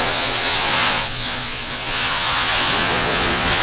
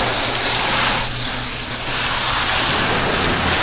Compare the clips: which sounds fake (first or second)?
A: first